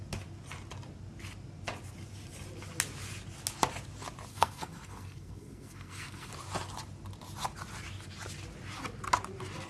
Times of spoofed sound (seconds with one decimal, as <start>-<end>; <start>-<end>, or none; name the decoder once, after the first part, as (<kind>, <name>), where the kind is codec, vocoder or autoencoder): 4.3-6.3 (codec, SNAC)